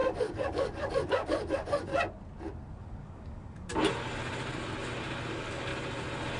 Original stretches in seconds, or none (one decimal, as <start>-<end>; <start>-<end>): 1.9-2.8; 3.7-5.3; 5.7-6.4